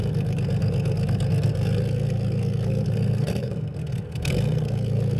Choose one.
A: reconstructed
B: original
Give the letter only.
A